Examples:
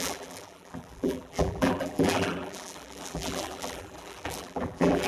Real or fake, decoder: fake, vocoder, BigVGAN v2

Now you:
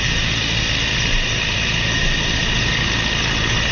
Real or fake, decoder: real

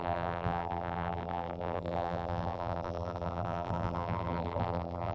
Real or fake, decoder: fake, vocoder, BigVGAN v2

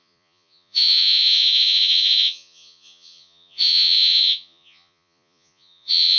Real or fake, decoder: fake, vocoder, Vocos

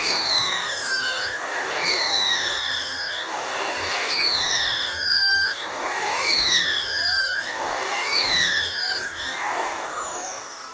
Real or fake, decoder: fake, codec, DAC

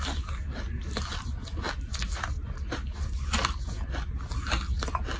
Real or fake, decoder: real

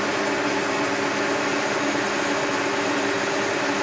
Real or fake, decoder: real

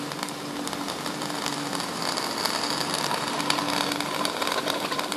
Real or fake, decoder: fake, vocoder, BigVGAN v2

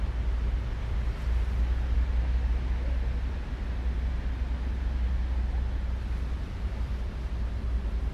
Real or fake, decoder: real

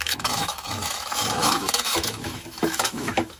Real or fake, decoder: fake, autoencoder, DAC-VAE